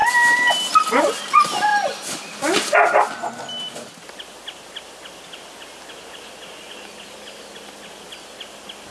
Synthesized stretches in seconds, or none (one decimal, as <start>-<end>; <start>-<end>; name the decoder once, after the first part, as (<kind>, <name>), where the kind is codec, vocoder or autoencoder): none